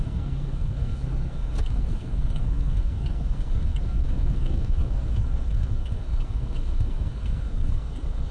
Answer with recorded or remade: remade